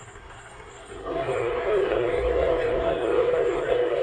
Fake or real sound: fake